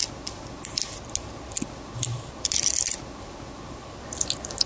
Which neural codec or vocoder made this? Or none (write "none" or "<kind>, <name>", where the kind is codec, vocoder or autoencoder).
none